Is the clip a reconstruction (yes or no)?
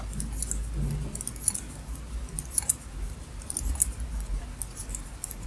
no